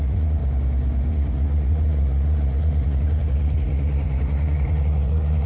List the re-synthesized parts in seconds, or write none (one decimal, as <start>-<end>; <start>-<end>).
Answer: 0.0-0.4; 1.1-5.5